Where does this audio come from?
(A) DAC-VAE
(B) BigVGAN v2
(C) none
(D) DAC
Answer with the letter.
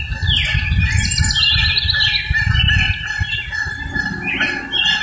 C